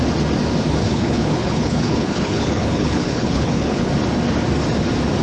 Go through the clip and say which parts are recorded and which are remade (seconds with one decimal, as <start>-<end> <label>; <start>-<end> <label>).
0.0-0.8 recorded; 0.8-3.9 remade; 3.9-5.2 recorded